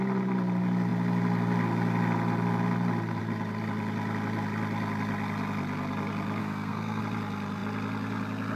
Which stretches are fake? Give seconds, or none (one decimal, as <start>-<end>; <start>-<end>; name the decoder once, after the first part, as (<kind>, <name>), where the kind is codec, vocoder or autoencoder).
6.4-7.0 (codec, SNAC)